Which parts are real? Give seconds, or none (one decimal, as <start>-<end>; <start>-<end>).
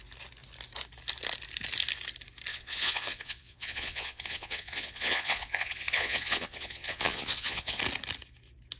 0.0-2.5; 7.8-8.8